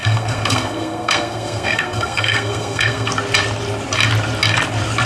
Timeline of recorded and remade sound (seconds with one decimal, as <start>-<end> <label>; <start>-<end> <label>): 0.0-3.1 remade; 3.1-5.1 recorded